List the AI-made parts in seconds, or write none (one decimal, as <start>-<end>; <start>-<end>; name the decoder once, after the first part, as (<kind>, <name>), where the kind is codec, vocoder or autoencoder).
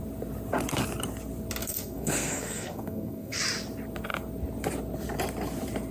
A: 1.6-3.4 (codec, SNAC)